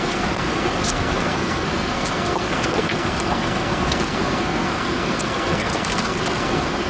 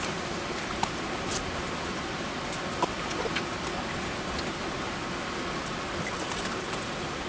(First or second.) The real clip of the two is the second